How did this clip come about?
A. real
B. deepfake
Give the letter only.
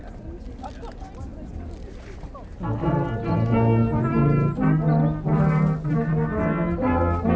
A